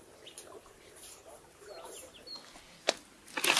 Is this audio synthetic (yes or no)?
no